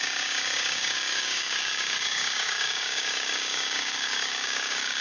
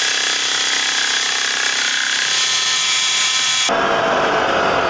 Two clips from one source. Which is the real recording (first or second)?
second